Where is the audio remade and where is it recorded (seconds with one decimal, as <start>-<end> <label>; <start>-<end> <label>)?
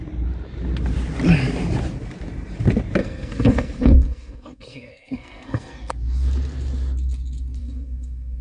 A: 0.0-3.0 recorded; 3.0-5.9 remade; 5.9-7.6 recorded; 7.6-8.4 remade